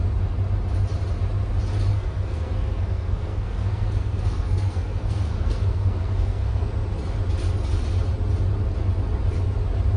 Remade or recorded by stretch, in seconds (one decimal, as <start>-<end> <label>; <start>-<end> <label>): 0.0-1.9 recorded; 1.9-6.7 remade; 6.7-10.0 recorded